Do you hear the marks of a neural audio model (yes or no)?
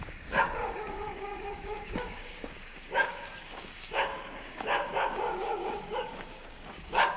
yes